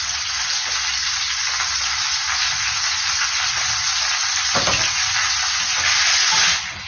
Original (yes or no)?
yes